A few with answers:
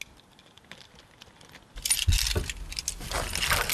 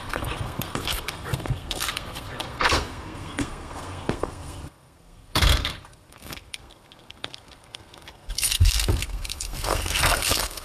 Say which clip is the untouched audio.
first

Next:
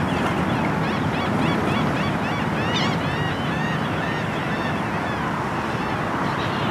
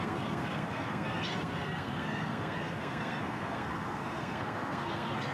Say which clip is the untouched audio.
first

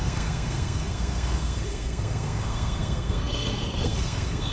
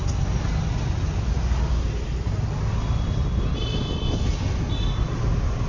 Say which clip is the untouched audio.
second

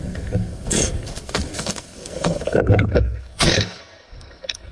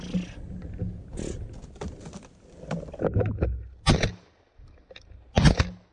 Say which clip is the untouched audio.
second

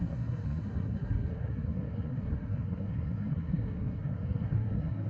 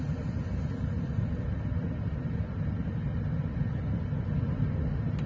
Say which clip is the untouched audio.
second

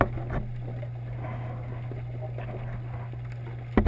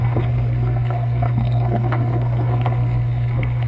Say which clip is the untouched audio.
first